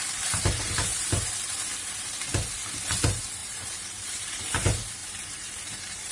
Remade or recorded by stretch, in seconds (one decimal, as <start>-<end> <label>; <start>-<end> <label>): 0.0-3.4 recorded; 3.4-4.4 remade; 4.4-5.0 recorded; 5.0-6.1 remade